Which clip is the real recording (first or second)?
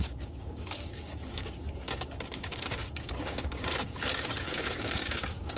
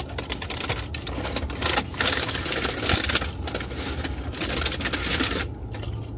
second